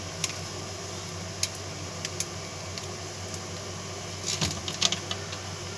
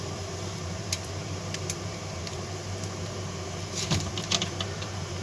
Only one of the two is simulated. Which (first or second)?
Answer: second